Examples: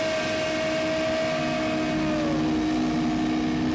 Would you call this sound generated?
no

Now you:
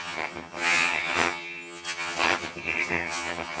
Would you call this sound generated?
yes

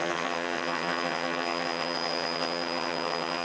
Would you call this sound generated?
yes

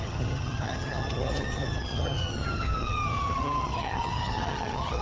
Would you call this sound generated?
yes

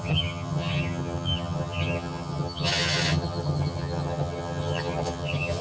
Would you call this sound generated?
yes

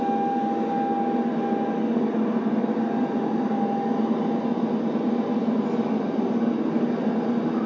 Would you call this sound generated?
no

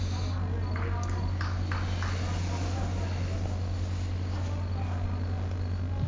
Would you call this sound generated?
no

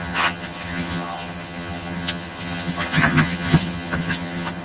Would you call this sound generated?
yes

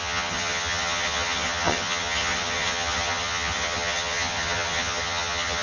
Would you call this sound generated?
yes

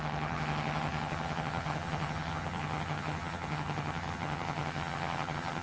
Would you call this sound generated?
yes